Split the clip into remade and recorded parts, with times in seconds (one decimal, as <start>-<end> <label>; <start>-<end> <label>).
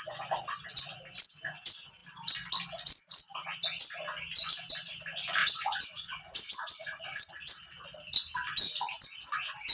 0.0-5.4 recorded; 5.4-7.3 remade; 7.3-9.7 recorded